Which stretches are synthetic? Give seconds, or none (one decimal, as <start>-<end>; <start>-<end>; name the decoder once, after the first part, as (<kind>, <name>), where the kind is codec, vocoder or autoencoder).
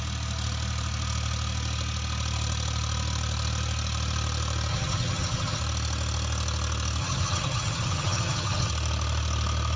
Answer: 4.7-5.6 (vocoder, HiFi-GAN); 7.0-8.7